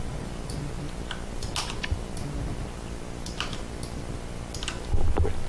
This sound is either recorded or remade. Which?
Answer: recorded